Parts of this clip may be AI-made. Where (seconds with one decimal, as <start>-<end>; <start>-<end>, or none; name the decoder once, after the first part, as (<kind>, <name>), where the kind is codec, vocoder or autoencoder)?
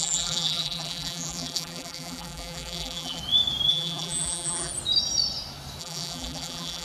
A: 0.0-3.2 (vocoder, BigVGAN v2); 3.7-4.7; 5.8-6.8